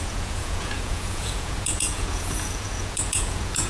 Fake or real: fake